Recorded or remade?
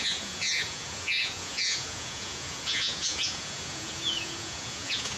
remade